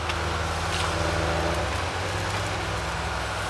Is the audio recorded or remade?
recorded